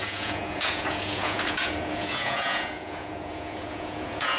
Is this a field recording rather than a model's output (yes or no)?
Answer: no